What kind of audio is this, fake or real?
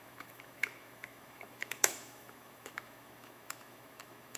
fake